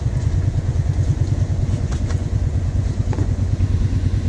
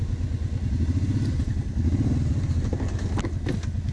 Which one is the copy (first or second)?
first